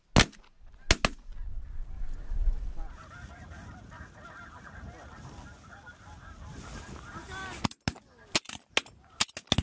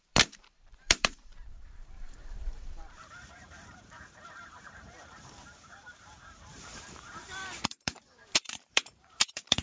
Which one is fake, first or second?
second